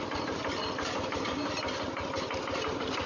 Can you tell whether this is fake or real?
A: real